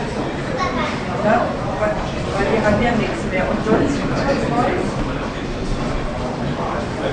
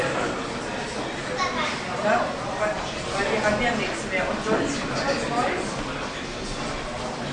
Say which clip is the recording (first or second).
second